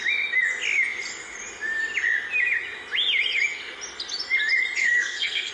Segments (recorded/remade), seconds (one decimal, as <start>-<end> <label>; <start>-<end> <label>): 0.0-4.8 recorded; 4.8-5.5 remade